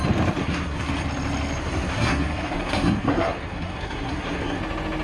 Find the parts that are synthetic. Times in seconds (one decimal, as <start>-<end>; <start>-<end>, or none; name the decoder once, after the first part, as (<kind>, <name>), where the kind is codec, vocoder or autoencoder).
0.4-0.9 (codec, SNAC); 1.6-4.6